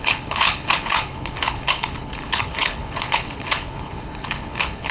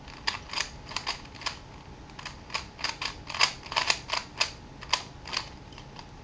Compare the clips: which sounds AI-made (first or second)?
first